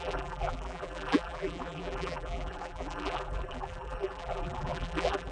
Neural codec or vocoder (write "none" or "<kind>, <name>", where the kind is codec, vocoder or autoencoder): vocoder, BigVGAN v2